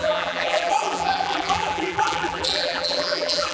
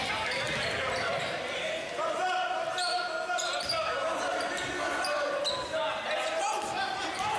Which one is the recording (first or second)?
second